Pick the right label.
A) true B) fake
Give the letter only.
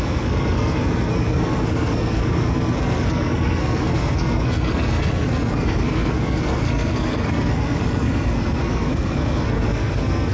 B